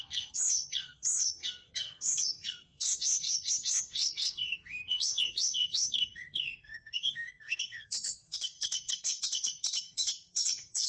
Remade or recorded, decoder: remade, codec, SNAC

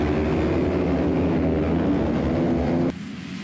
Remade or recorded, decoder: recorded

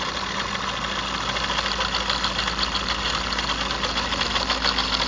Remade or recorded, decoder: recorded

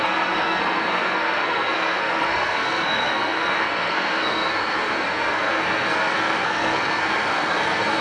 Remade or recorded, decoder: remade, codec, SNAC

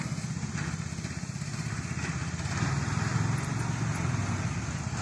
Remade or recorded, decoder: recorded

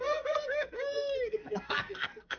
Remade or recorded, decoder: remade, codec, SNAC